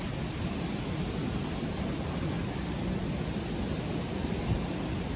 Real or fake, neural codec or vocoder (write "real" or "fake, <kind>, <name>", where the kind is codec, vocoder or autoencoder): real